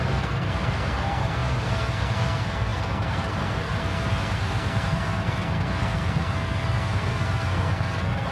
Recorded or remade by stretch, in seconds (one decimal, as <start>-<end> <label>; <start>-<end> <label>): 0.0-8.3 remade

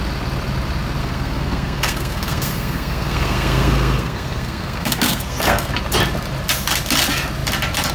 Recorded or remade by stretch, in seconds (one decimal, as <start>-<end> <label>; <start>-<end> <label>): 0.0-1.0 recorded; 1.0-5.7 remade; 5.7-7.9 recorded

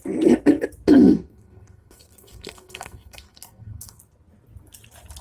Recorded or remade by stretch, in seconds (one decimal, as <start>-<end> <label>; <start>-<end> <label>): 0.0-0.9 recorded; 0.9-4.0 remade; 4.0-5.2 recorded

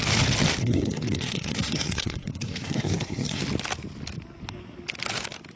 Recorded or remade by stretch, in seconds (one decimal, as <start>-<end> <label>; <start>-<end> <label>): 0.0-0.6 recorded; 0.6-3.4 remade; 3.4-5.6 recorded

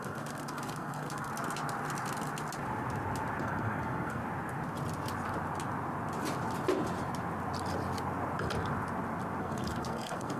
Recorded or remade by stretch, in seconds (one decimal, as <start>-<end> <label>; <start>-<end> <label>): 0.0-1.3 remade; 1.3-3.4 recorded; 3.4-4.2 remade; 4.2-9.4 recorded; 9.4-10.4 remade

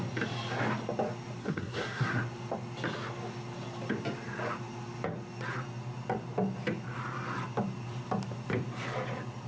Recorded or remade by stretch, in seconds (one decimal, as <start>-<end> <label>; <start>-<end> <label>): 0.0-1.4 recorded; 1.4-2.1 remade; 2.1-9.5 recorded